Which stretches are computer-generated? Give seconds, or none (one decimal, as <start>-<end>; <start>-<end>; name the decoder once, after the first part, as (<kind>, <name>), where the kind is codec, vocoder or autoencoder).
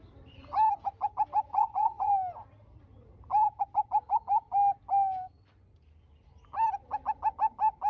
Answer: 1.5-2.1 (vocoder, WaveNeXt)